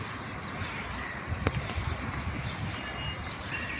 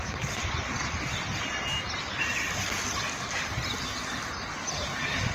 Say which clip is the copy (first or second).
first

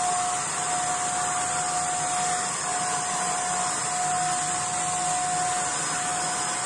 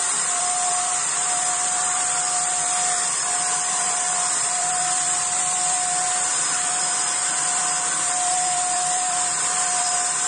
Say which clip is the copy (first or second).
second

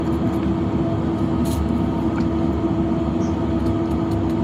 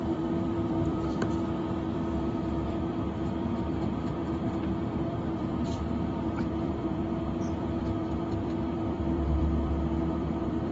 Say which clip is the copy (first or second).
second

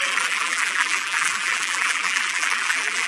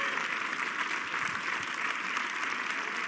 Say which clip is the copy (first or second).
first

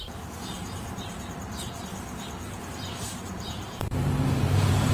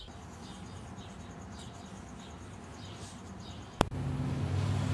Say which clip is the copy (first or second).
first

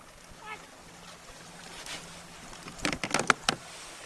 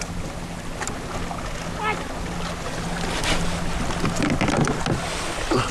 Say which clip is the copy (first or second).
first